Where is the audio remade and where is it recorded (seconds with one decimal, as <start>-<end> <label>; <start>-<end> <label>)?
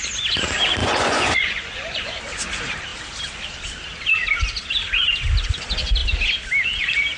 0.0-0.8 recorded; 0.8-2.2 remade; 2.2-7.2 recorded